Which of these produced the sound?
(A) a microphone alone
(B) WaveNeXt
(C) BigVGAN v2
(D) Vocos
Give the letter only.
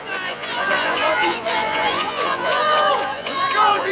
D